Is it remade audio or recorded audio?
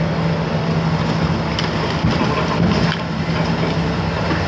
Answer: recorded